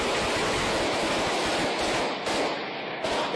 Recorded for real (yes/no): yes